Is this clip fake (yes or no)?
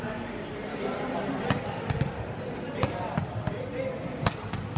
no